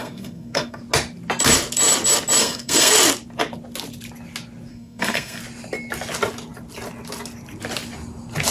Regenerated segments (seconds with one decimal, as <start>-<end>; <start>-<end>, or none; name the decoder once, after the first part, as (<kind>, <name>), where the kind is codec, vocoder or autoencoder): 0.0-0.8 (codec, SNAC); 2.4-2.9; 4.7-5.4